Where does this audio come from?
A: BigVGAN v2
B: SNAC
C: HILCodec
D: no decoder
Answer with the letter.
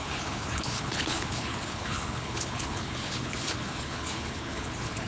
C